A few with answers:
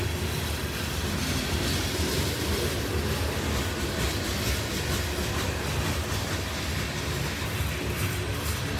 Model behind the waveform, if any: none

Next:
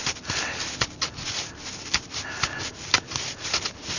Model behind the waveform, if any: none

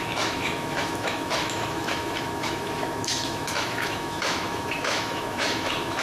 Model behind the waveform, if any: autoencoder, DAC-VAE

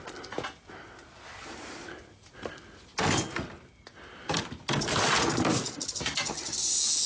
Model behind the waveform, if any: none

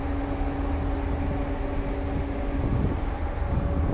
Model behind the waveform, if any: none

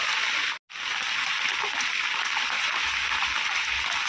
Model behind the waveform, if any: none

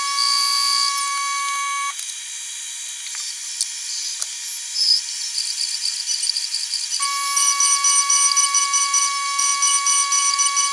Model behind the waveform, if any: none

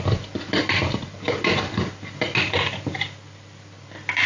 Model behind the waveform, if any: none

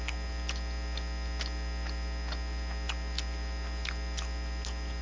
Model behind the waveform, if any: none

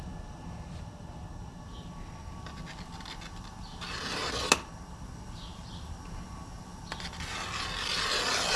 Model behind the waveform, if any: none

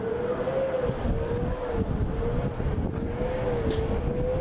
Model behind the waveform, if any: none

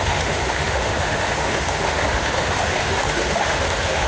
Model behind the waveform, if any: autoencoder, DAC-VAE